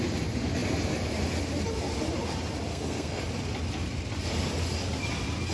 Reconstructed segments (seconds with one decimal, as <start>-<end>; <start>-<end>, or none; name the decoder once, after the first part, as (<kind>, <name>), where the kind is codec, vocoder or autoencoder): 2.7-3.2 (codec, SNAC)